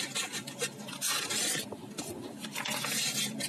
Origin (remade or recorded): recorded